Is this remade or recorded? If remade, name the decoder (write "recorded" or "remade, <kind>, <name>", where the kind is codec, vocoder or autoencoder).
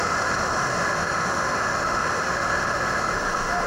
remade, autoencoder, DAC-VAE